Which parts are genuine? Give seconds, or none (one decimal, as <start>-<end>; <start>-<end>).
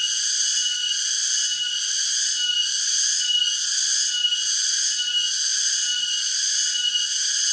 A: 0.0-5.5; 6.5-7.5